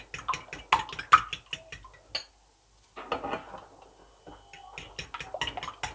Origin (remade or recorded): recorded